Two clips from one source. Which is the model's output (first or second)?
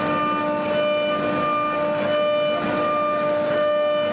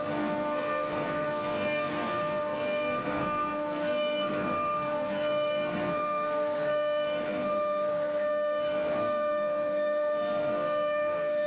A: second